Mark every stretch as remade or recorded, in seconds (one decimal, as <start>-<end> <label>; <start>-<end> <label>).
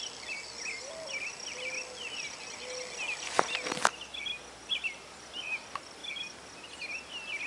0.0-7.5 recorded